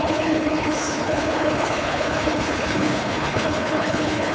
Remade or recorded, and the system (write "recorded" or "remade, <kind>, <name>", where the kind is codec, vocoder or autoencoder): remade, codec, HILCodec